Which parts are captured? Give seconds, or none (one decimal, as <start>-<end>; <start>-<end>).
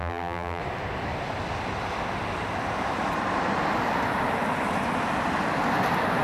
0.6-6.2